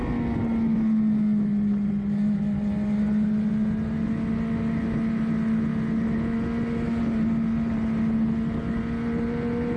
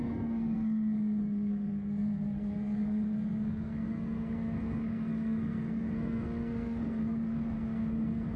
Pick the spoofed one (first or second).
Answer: second